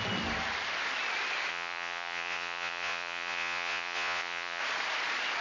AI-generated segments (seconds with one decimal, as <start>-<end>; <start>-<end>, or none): 1.5-4.6